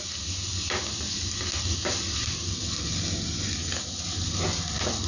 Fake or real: real